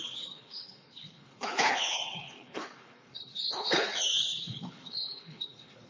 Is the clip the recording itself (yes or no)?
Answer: no